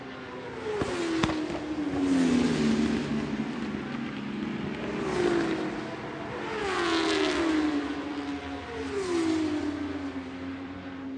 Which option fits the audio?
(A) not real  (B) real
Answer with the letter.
B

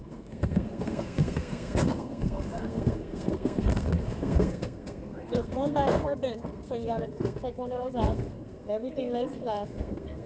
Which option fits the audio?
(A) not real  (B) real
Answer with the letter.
A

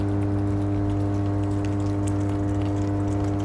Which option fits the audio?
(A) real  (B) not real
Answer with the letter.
A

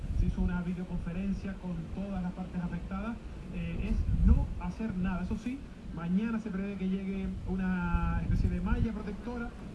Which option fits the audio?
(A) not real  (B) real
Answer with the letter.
B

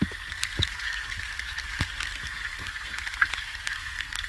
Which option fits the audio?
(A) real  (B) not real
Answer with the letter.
B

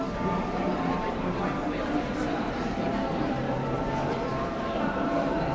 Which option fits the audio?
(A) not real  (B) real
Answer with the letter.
A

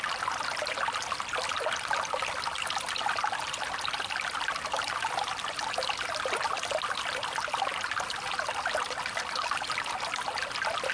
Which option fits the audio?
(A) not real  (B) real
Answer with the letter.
B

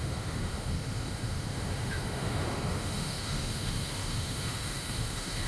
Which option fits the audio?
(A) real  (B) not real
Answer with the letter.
B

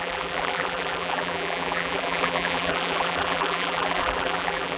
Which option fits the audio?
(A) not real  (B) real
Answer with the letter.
A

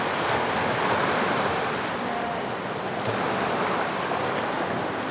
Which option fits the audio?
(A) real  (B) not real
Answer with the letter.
A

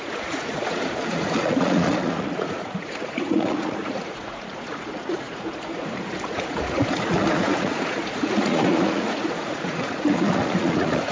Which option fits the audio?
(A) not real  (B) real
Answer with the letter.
A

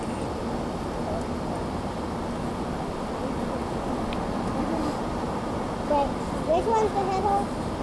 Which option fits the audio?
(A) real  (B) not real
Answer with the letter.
A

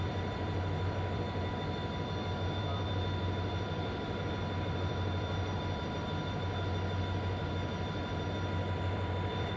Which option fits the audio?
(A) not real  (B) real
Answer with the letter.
A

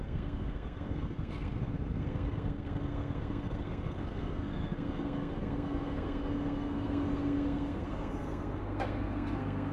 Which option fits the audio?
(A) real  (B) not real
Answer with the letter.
B